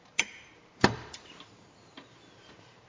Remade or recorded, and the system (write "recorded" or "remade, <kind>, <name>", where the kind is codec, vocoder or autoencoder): remade, vocoder, BigVGAN v2